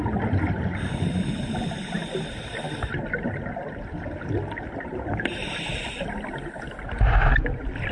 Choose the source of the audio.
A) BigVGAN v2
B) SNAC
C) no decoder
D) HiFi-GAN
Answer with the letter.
C